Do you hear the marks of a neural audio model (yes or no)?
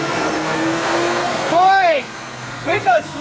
yes